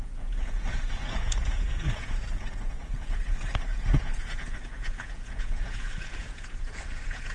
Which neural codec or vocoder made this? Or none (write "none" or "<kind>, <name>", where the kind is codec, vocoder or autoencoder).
vocoder, Vocos